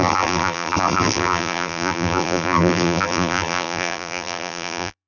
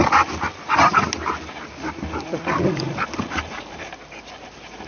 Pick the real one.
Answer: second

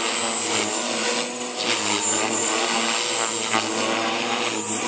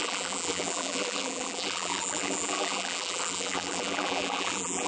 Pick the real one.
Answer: first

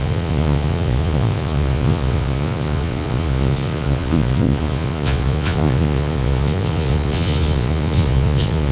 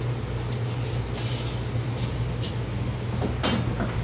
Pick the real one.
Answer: second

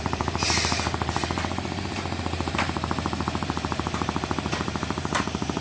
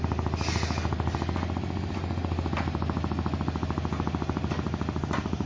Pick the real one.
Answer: second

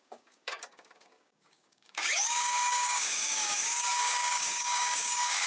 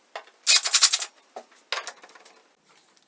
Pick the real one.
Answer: second